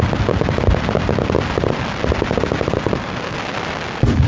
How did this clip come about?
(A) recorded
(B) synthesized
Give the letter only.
A